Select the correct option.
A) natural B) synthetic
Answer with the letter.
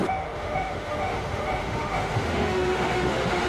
B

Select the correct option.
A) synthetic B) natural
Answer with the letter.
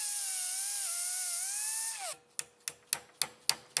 B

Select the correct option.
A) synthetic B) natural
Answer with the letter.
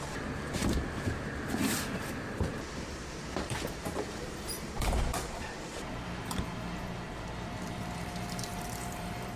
A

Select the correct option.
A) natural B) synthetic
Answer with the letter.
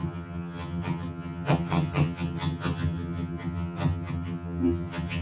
B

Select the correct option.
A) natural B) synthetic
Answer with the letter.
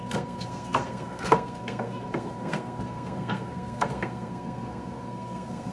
B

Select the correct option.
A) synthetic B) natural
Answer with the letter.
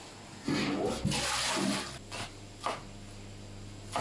B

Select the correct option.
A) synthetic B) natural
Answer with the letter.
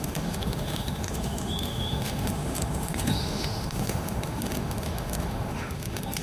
A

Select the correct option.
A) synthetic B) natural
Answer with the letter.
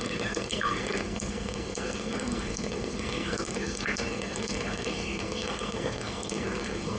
A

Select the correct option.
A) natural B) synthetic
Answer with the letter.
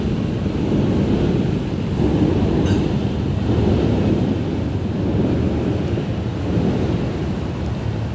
A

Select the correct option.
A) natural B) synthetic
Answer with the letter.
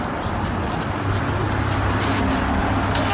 A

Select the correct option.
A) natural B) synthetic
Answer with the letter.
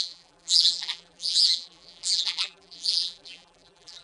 B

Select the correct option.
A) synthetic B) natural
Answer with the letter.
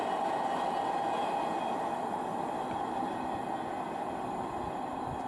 B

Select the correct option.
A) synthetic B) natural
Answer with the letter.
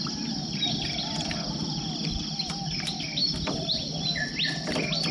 B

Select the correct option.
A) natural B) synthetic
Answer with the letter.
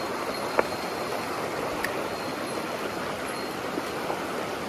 A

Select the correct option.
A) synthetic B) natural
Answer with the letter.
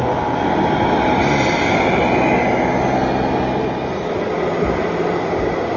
B